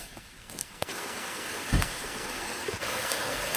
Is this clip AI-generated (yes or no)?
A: yes